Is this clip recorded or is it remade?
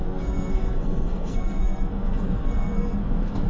remade